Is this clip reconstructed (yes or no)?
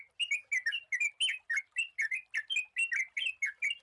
no